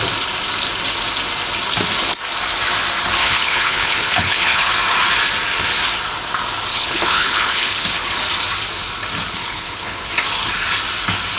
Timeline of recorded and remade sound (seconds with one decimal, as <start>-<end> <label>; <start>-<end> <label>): 0.0-3.2 recorded; 3.2-4.7 remade; 4.7-6.7 recorded; 6.7-7.9 remade; 7.9-9.4 recorded; 9.4-10.1 remade; 10.1-11.4 recorded